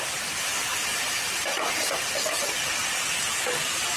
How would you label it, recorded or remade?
remade